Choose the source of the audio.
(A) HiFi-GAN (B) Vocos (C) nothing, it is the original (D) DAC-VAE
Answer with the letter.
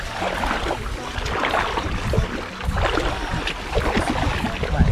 C